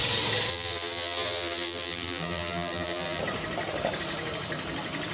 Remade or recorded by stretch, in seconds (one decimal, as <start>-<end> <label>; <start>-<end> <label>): 0.0-0.5 recorded; 0.5-3.2 remade; 3.2-5.1 recorded